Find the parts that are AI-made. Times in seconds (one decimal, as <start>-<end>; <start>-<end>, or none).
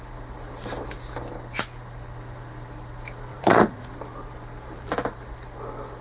3.3-3.9